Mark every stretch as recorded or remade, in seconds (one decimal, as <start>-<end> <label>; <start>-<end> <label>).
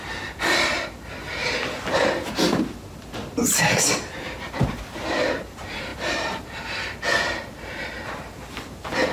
0.0-9.1 remade